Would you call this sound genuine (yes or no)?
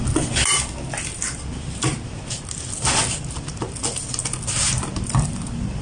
yes